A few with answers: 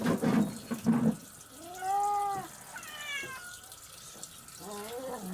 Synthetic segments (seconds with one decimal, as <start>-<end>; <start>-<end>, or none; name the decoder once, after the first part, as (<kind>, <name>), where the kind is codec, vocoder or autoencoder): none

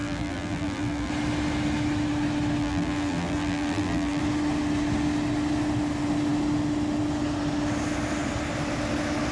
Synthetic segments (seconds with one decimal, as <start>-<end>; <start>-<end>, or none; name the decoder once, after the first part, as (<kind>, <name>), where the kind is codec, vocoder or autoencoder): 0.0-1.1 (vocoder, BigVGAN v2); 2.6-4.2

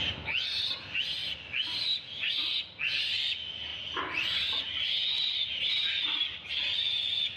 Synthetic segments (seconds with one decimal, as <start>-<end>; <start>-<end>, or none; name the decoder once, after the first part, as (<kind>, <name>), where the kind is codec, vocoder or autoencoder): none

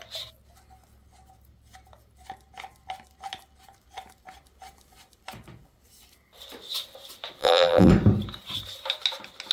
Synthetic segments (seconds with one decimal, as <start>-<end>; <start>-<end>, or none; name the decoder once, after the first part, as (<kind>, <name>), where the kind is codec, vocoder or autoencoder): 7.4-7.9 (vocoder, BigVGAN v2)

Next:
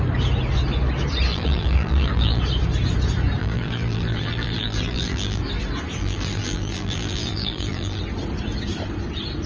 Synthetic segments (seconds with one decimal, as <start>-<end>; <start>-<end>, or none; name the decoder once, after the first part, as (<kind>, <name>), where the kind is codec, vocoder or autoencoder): 1.3-2.4 (vocoder, BigVGAN v2); 3.4-5.4; 6.0-8.0

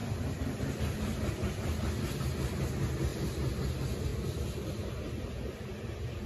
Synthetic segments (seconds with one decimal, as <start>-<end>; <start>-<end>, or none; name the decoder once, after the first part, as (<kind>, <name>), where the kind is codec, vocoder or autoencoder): 0.0-2.2 (vocoder, BigVGAN v2); 3.1-3.6; 4.1-4.9